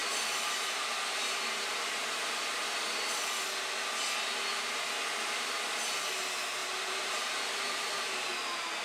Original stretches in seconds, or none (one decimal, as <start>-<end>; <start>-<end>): 1.6-6.6; 8.3-8.8